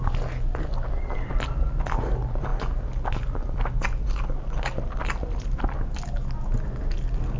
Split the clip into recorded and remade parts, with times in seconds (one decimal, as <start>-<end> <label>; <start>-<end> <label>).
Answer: 0.0-7.4 recorded